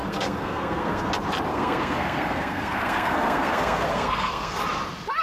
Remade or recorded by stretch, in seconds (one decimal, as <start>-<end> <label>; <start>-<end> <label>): 0.0-1.1 remade; 1.1-1.5 recorded; 1.5-4.6 remade; 4.6-5.2 recorded